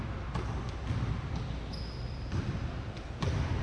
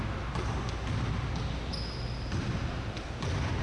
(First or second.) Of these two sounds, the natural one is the second